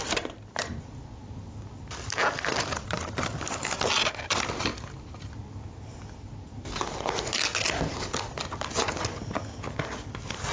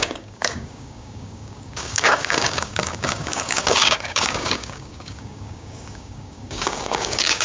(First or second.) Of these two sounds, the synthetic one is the second